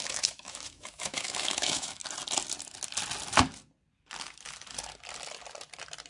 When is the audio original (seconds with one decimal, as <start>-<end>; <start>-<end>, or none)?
2.0-6.1